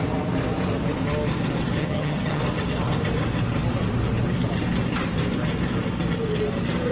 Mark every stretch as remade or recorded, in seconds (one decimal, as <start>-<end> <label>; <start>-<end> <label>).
0.0-1.8 recorded; 1.8-2.4 remade; 2.4-6.9 recorded